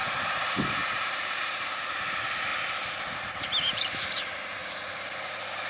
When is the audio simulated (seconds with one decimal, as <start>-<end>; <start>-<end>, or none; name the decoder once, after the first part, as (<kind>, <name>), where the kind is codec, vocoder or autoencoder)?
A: 0.0-5.7 (vocoder, BigVGAN v2)